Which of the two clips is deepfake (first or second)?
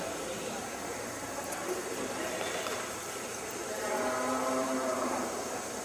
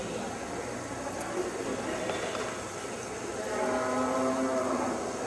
first